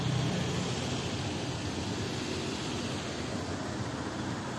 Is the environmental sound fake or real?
real